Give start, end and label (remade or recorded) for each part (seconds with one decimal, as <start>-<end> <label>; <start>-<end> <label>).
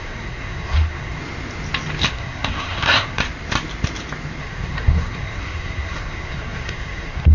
0.0-1.2 remade; 1.2-2.1 recorded; 2.1-3.2 remade; 3.2-4.4 recorded; 4.4-7.3 remade